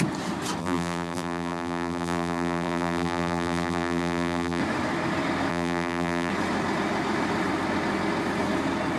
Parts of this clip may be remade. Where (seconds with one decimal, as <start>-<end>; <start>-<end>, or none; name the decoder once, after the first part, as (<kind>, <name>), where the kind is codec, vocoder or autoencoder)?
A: 0.6-4.6 (vocoder, BigVGAN v2); 5.5-6.3